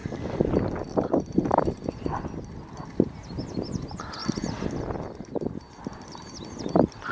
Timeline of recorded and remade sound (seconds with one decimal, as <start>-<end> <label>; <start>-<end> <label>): 0.0-7.1 recorded